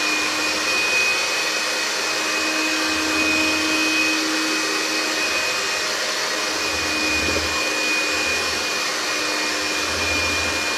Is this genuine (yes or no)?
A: yes